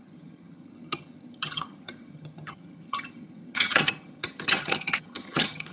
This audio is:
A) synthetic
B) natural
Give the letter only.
A